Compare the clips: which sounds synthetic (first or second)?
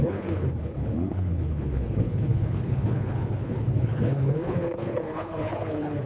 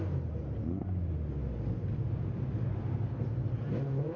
first